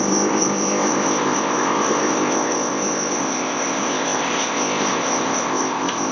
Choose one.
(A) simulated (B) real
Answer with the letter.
A